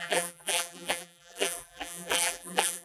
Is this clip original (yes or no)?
no